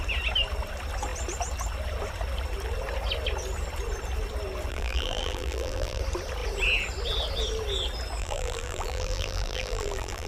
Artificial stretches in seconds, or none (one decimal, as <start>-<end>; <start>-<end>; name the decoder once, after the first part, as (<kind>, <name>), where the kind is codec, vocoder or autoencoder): 4.7-6.0 (vocoder, BigVGAN v2); 8.2-10.3